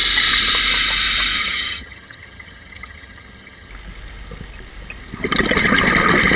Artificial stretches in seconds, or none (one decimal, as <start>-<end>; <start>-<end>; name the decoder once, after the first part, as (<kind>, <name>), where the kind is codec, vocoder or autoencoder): 1.4-3.7 (vocoder, HiFi-GAN)